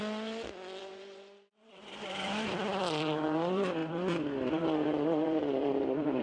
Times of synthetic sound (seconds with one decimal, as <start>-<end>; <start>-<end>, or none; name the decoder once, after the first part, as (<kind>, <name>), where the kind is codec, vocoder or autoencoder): 0.8-6.2 (vocoder, BigVGAN v2)